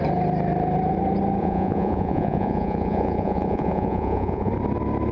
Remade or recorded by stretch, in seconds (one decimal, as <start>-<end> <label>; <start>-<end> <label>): 0.0-1.4 recorded; 1.4-4.5 remade; 4.5-5.1 recorded